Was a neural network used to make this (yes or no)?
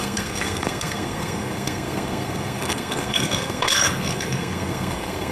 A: yes